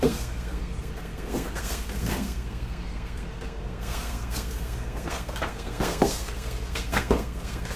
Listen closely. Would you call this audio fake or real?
fake